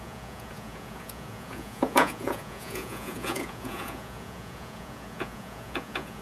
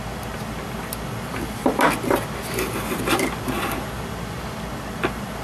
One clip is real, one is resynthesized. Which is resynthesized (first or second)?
first